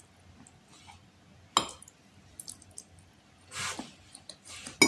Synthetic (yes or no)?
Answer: no